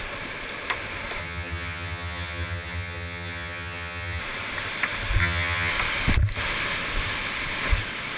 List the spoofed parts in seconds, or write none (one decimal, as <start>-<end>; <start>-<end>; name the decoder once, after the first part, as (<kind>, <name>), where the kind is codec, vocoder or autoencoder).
1.2-4.2 (vocoder, HiFi-GAN); 5.2-5.7